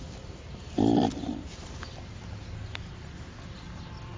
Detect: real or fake real